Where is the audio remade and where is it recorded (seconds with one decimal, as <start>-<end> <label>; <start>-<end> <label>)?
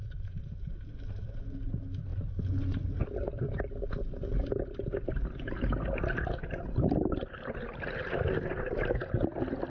0.0-9.7 recorded